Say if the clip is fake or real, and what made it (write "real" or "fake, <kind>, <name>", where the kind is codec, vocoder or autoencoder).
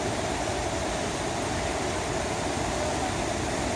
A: real